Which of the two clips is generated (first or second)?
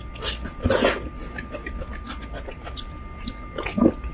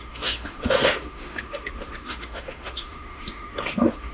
second